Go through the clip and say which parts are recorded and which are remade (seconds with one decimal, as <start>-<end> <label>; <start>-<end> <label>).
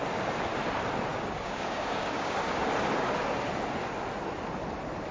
0.0-1.1 recorded; 1.1-2.7 remade; 2.7-5.1 recorded